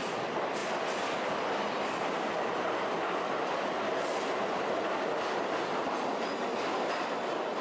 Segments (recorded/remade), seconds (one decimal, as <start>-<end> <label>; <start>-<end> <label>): 0.0-7.6 recorded